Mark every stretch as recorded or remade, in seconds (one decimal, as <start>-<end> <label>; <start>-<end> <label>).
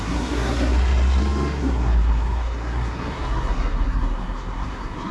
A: 0.0-5.1 remade